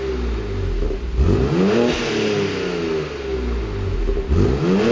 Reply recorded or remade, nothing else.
recorded